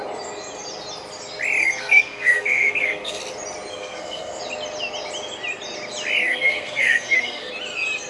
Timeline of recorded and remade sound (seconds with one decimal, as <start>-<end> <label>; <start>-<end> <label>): 0.0-1.6 recorded; 1.6-3.2 remade; 3.2-3.7 recorded; 3.7-4.4 remade; 4.4-6.2 recorded; 6.2-7.5 remade; 7.5-8.1 recorded